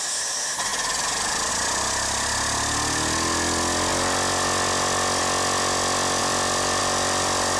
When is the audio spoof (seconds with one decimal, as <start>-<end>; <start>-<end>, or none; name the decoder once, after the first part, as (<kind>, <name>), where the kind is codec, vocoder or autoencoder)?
0.7-1.5 (vocoder, BigVGAN v2); 6.2-6.8